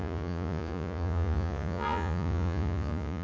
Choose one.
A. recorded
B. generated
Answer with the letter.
B